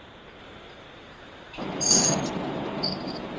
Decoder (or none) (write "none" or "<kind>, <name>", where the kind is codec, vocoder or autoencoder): vocoder, BigVGAN v2